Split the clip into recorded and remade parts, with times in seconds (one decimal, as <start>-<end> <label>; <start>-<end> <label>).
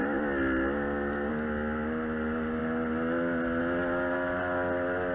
0.0-5.1 recorded